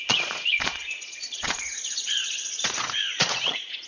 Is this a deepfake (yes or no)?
yes